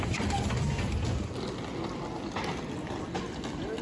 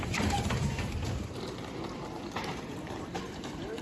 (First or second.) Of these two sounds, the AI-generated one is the second